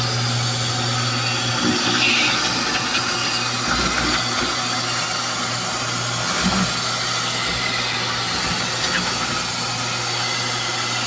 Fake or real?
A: real